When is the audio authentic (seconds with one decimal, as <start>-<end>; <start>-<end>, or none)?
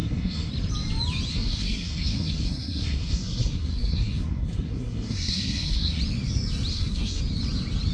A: 0.5-1.3; 6.0-6.7; 7.2-7.9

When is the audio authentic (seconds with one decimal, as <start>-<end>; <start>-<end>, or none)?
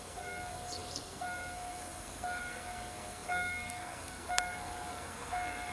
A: none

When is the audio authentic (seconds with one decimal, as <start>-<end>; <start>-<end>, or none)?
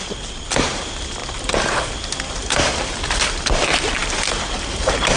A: 0.0-5.2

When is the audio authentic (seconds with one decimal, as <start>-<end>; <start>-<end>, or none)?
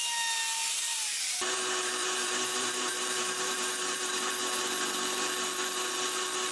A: 0.0-0.9; 4.3-6.5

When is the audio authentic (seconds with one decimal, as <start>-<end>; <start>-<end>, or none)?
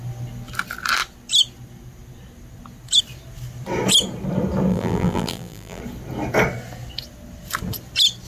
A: 0.0-4.7; 5.8-8.3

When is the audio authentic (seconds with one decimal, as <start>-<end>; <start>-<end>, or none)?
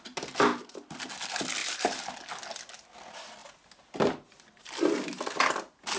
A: 0.0-0.5; 1.0-1.6; 2.1-6.0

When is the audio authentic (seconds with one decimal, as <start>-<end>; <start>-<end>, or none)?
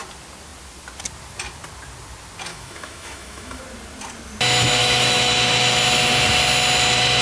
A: 0.0-2.5; 3.6-4.8; 5.3-7.2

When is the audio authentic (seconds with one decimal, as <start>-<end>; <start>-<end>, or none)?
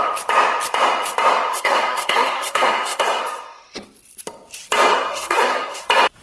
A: 0.0-1.5; 3.2-4.9; 5.8-6.2